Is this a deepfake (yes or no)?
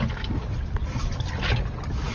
no